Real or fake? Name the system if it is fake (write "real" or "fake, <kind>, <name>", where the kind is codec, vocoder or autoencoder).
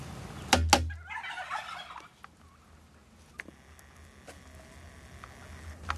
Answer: real